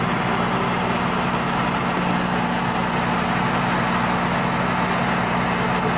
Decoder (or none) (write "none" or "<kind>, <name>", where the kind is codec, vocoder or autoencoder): none